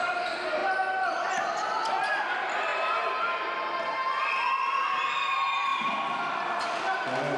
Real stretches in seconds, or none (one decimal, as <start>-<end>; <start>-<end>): 0.6-2.2; 2.7-4.8